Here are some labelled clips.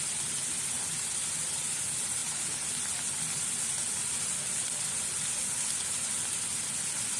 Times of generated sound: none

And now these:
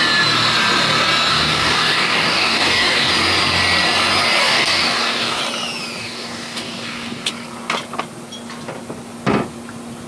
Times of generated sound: 1.3-3.1; 4.4-5.4; 6.0-7.3

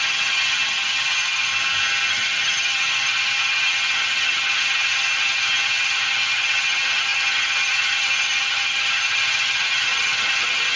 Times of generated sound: 0.0-1.5; 2.1-10.8

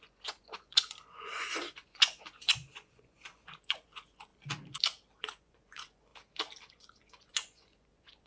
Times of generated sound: 0.0-4.3; 5.2-6.1; 6.7-8.3

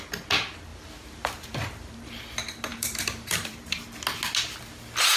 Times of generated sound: 0.7-2.2; 2.7-3.8

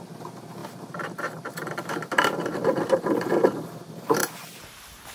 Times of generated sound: 0.6-3.7; 4.2-5.1

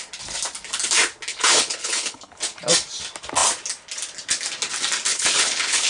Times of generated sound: 1.3-2.4; 5.1-5.9